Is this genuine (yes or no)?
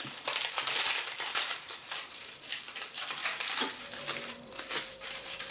no